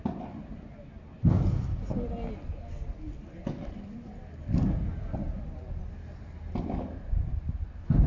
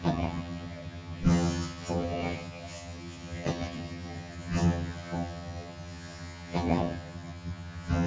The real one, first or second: first